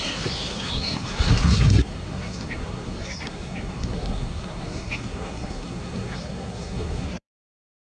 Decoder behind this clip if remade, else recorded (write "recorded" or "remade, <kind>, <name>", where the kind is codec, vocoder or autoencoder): remade, codec, SNAC